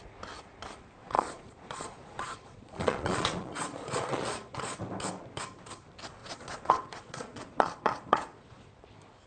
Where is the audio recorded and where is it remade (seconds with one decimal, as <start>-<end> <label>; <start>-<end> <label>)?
0.0-1.0 recorded; 1.0-4.8 remade; 4.8-6.2 recorded; 6.2-8.7 remade; 8.7-9.3 recorded